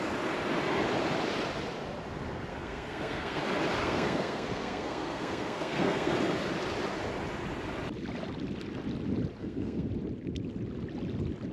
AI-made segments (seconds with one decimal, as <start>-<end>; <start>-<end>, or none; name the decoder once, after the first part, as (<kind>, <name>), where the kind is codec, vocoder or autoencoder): 2.5-3.4 (codec, SNAC); 3.8-6.1; 9.4-9.9